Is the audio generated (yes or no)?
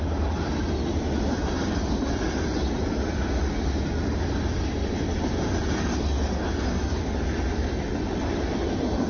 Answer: no